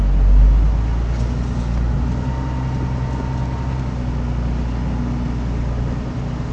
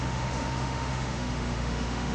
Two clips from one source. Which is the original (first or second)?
first